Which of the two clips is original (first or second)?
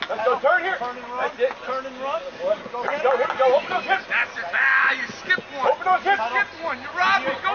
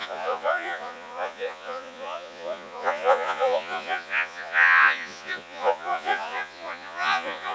first